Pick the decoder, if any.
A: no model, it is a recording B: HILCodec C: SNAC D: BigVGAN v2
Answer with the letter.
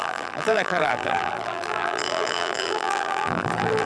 D